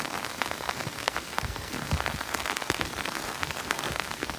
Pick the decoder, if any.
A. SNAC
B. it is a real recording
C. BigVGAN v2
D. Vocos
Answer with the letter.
A